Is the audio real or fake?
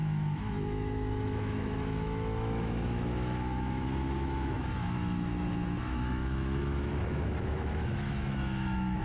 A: fake